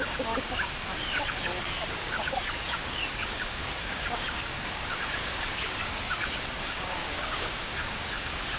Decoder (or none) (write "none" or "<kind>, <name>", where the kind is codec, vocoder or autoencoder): codec, DAC